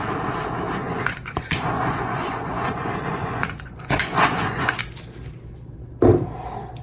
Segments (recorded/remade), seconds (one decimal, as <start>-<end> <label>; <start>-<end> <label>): 0.0-0.8 recorded; 0.8-4.8 remade; 4.8-6.8 recorded